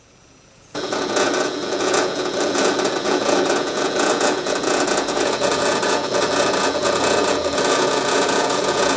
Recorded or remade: remade